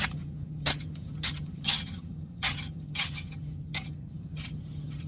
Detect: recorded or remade remade